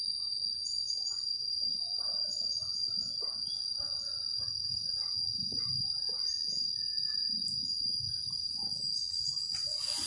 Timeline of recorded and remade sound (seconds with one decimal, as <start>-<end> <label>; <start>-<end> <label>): 0.0-10.1 recorded